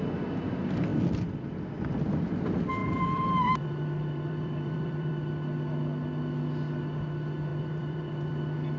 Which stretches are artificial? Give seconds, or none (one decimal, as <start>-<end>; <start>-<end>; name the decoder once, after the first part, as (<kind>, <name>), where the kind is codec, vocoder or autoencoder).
2.8-5.1 (vocoder, BigVGAN v2); 7.5-8.3